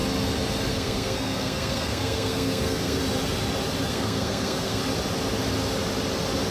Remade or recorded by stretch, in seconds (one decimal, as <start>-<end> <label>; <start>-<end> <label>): 0.0-0.7 recorded; 0.7-3.0 remade; 3.0-3.9 recorded; 3.9-4.8 remade; 4.8-6.5 recorded